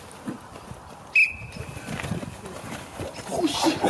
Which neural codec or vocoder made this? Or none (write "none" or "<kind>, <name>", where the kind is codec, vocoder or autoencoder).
none